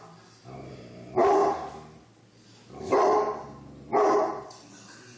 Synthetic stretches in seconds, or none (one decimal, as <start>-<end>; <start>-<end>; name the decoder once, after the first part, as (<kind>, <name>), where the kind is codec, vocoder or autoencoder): none